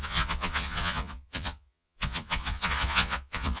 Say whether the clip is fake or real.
fake